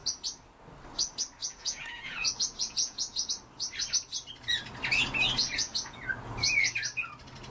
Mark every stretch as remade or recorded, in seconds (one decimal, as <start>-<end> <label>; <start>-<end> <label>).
0.0-1.4 recorded; 1.4-3.3 remade; 3.3-5.4 recorded; 5.4-6.0 remade; 6.0-7.5 recorded